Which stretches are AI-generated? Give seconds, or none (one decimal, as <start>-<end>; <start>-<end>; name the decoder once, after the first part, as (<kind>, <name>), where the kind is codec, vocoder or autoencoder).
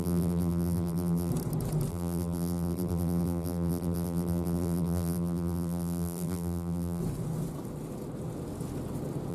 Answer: 0.0-1.3 (vocoder, BigVGAN v2); 1.9-7.0